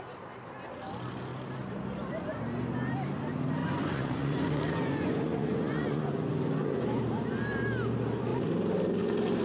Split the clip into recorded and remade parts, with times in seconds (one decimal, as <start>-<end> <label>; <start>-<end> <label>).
0.0-3.6 recorded; 3.6-6.3 remade; 6.3-9.4 recorded